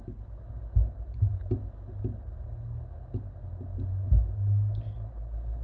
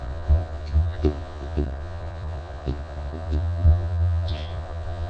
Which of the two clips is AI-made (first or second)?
second